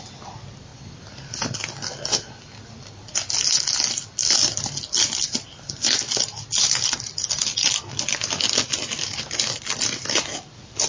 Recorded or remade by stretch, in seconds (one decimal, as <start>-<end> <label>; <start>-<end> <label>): 0.0-10.9 recorded